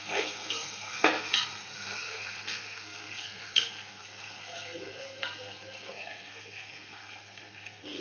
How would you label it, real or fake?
fake